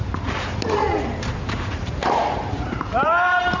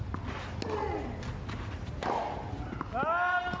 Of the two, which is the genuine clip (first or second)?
second